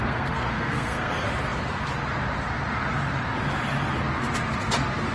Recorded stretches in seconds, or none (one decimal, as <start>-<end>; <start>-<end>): 1.1-5.1